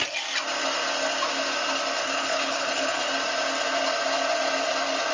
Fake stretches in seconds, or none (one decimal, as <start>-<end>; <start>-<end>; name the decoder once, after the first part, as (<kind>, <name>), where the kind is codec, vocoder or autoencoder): 2.0-3.1 (codec, HILCodec)